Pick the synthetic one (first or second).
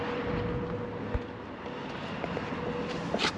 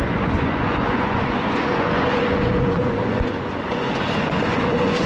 second